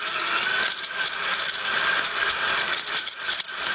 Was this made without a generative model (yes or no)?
yes